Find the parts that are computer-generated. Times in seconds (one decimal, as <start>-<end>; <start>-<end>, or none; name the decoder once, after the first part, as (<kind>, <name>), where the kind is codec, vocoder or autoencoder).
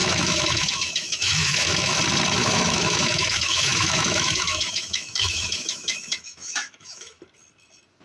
0.0-2.0 (autoencoder, DAC-VAE); 2.4-7.2